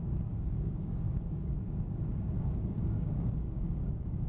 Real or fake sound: fake